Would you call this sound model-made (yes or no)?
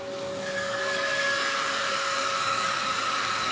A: yes